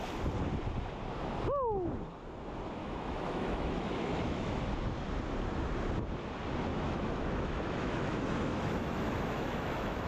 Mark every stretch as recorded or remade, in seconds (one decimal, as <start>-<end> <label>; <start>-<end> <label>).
0.0-2.8 recorded; 2.8-4.6 remade; 4.6-6.7 recorded; 6.7-10.1 remade